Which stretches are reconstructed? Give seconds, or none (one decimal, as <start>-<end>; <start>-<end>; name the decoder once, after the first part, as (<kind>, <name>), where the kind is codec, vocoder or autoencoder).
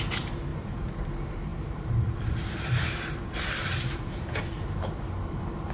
0.5-1.1 (vocoder, BigVGAN v2); 1.5-4.9